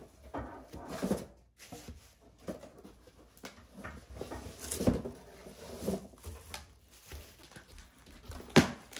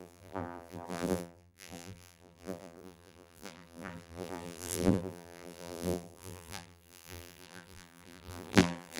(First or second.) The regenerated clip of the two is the second